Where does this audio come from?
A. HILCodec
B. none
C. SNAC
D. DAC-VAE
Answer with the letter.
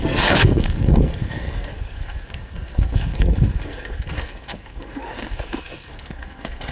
C